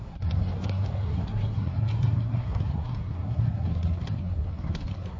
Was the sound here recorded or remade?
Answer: remade